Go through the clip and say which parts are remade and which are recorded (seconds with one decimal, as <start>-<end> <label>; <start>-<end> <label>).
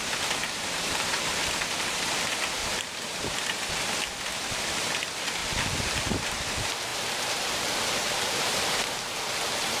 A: 0.0-0.4 recorded; 0.4-1.4 remade; 1.4-2.6 recorded; 2.6-3.7 remade; 3.7-5.4 recorded; 5.4-6.3 remade; 6.3-6.9 recorded; 6.9-8.7 remade; 8.7-9.8 recorded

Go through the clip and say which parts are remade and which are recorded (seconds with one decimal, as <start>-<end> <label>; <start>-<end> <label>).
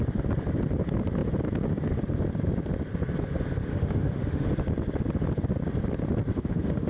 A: 0.0-3.7 recorded; 3.7-4.5 remade; 4.5-6.3 recorded; 6.3-6.9 remade